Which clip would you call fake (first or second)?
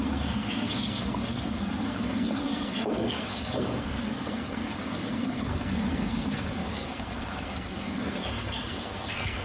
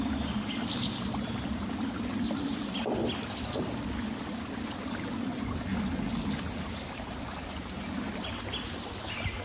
first